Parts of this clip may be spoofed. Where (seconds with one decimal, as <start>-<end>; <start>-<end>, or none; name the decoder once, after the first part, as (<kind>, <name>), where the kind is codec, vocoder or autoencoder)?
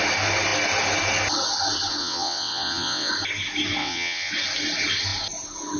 2.0-3.1 (vocoder, WaveNeXt); 3.8-4.3